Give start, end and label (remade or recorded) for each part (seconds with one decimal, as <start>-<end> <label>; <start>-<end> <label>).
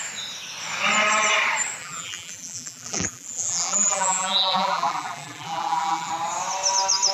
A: 0.0-1.8 recorded; 1.8-6.1 remade; 6.1-7.1 recorded